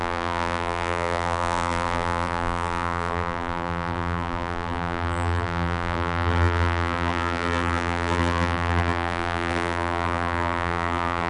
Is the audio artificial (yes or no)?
yes